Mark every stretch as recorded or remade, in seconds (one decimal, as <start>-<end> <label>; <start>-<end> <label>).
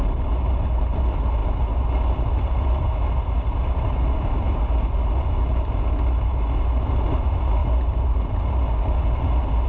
0.0-9.7 recorded